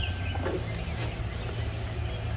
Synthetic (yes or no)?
no